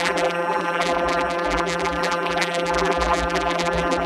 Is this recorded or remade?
remade